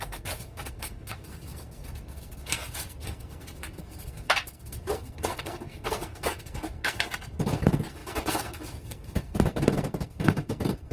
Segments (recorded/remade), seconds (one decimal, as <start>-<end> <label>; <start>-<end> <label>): 0.0-10.9 remade